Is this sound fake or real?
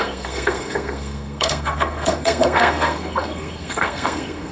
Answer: fake